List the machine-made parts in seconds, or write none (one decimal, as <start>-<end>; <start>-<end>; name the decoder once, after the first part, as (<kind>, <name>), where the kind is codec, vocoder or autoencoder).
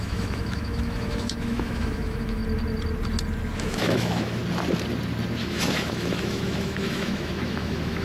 0.0-2.4 (autoencoder, DAC-VAE); 3.6-4.4; 5.4-8.0